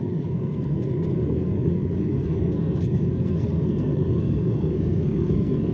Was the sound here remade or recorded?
remade